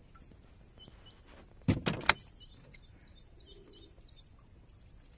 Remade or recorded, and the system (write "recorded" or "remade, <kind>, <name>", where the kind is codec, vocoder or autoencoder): recorded